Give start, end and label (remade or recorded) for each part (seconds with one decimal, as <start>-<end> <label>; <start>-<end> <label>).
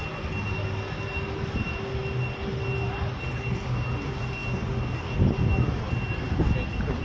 0.0-7.0 recorded